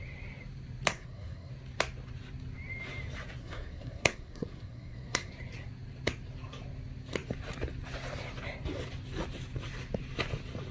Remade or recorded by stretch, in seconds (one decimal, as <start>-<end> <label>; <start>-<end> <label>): 0.0-0.9 recorded; 0.9-1.5 remade; 1.5-3.4 recorded; 3.4-5.3 remade; 5.3-10.7 recorded